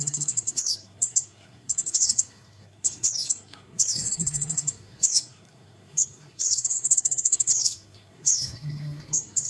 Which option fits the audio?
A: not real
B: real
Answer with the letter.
A